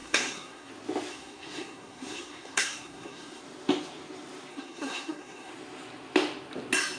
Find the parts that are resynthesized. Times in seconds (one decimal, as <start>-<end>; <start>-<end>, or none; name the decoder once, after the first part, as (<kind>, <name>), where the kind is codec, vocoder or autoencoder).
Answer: 0.0-0.7 (codec, SNAC); 1.1-3.4; 4.5-5.5